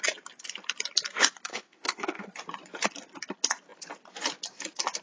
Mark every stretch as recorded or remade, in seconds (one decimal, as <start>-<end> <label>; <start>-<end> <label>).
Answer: 0.0-1.5 recorded; 1.5-2.3 remade; 2.3-5.0 recorded